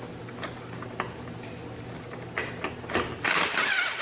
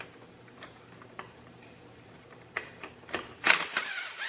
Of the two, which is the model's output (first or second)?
second